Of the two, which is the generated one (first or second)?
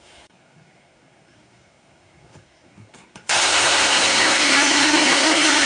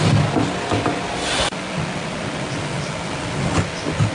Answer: first